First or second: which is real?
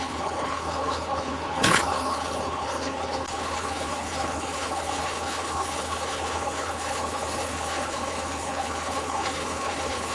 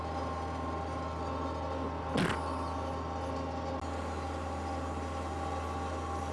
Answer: second